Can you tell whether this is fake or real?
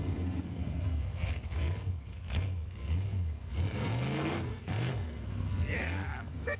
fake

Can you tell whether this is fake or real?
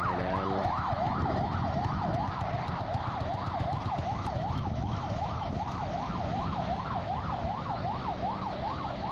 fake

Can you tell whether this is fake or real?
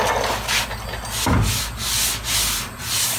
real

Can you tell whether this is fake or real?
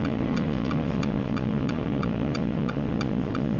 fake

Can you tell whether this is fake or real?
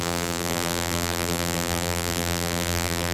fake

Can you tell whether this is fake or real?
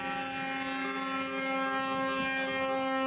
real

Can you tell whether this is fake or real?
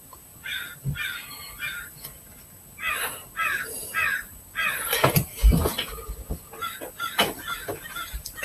real